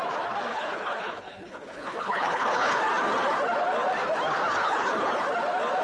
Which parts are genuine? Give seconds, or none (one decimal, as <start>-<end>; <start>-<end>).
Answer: 0.0-0.5; 2.8-4.6; 5.2-5.8